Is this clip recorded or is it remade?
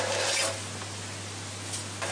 recorded